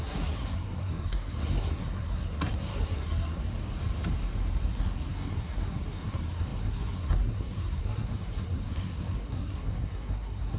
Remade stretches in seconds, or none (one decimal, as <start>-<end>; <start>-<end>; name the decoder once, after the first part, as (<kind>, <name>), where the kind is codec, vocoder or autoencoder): 0.0-3.4 (codec, SNAC); 4.7-10.6